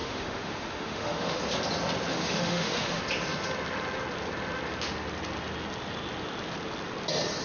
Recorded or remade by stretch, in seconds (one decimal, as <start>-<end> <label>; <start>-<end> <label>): 0.0-1.4 remade; 1.4-2.1 recorded; 2.1-3.0 remade; 3.0-7.4 recorded